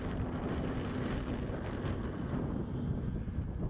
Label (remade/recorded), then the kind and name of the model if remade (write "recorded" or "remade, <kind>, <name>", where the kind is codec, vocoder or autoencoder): recorded